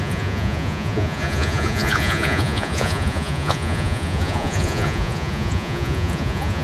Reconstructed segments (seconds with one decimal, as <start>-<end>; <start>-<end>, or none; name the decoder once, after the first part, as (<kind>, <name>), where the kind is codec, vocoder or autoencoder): 0.0-6.6 (vocoder, Vocos)